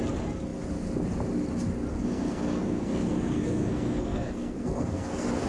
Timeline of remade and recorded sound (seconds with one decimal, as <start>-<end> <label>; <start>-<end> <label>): 0.0-1.9 recorded; 1.9-5.5 remade